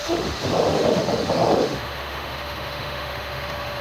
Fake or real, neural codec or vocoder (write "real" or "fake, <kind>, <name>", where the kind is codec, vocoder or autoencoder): fake, autoencoder, DAC-VAE